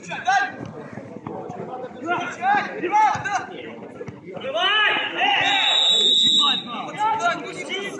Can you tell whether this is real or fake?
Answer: real